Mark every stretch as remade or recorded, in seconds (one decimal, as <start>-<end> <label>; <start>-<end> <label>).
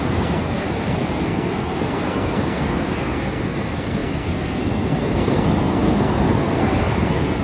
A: 0.0-7.4 remade